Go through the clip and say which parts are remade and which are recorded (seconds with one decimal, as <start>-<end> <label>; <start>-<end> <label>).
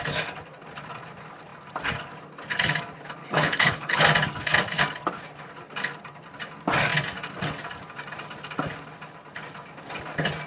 0.0-3.2 recorded; 3.2-4.0 remade; 4.0-10.5 recorded